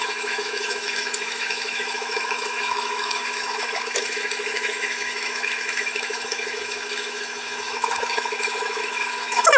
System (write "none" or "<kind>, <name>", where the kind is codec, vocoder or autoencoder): autoencoder, DAC-VAE